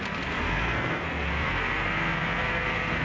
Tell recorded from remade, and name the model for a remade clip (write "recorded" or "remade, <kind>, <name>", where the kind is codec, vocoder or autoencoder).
remade, codec, SNAC